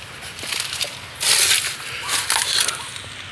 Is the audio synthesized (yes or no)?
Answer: no